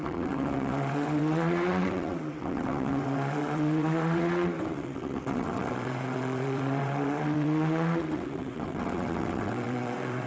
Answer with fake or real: fake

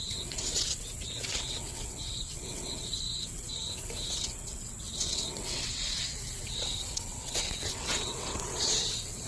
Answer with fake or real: fake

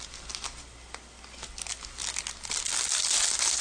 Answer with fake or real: real